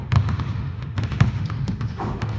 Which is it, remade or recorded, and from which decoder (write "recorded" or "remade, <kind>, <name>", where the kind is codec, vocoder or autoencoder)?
remade, autoencoder, DAC-VAE